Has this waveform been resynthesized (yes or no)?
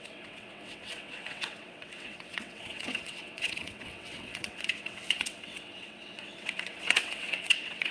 yes